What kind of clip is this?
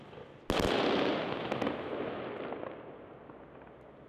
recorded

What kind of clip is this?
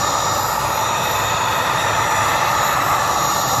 remade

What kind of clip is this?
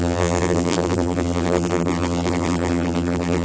remade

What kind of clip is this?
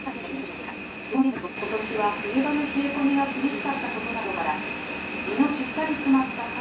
recorded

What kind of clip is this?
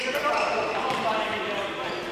recorded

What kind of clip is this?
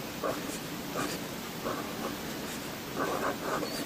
recorded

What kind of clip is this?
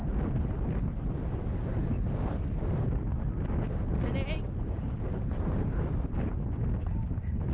recorded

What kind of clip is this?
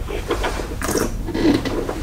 remade